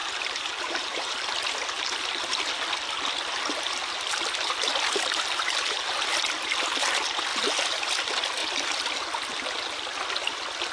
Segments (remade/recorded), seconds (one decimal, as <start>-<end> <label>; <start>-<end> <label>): 0.0-2.0 remade; 2.0-4.7 recorded; 4.7-6.1 remade; 6.1-7.3 recorded; 7.3-7.9 remade; 7.9-10.7 recorded